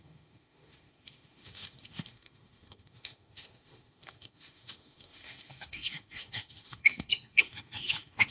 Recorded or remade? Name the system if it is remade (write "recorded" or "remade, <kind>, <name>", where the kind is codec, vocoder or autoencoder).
remade, autoencoder, DAC-VAE